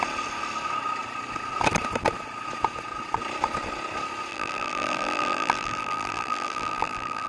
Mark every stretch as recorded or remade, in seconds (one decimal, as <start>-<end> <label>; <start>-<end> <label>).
0.0-4.3 recorded; 4.3-7.3 remade